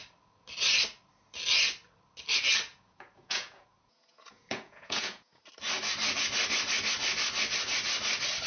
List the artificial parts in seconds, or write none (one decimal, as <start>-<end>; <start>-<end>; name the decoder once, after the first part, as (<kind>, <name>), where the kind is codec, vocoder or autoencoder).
2.7-5.4 (vocoder, Vocos)